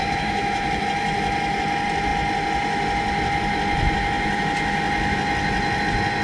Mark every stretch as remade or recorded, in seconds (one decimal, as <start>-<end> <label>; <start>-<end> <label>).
0.0-0.8 remade; 0.8-6.2 recorded